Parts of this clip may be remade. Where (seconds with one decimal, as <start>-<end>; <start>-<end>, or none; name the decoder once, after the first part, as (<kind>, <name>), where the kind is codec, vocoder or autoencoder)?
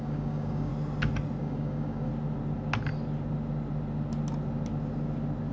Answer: 0.0-0.7 (codec, DAC); 1.4-2.1